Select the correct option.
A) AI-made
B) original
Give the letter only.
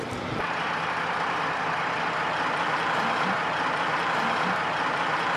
A